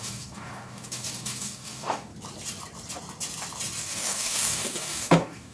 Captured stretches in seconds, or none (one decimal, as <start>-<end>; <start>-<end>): 2.1-3.8